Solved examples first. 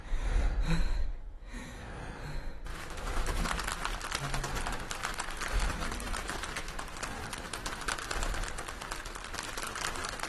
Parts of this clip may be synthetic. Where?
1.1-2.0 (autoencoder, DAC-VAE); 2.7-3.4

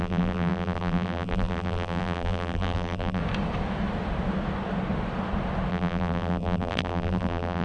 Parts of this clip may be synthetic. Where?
0.0-3.2 (vocoder, BigVGAN v2); 5.7-7.6

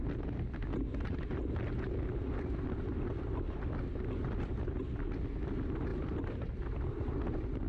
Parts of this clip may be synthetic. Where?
5.9-6.5 (vocoder, BigVGAN v2)

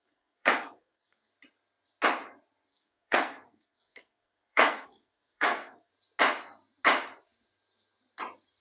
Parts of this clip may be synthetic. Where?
0.0-1.3 (codec, SNAC); 2.7-5.9